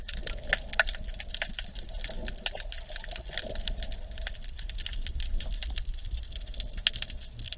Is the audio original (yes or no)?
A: yes